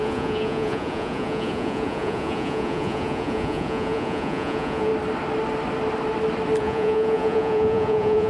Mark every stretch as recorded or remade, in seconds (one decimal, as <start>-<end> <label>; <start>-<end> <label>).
0.0-4.9 remade; 4.9-6.6 recorded; 6.6-8.3 remade